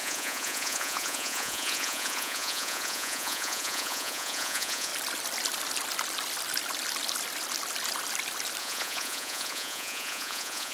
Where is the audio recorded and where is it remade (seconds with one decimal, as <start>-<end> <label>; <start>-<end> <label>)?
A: 0.0-4.9 remade; 4.9-8.6 recorded; 8.6-10.7 remade